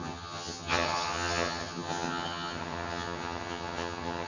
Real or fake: fake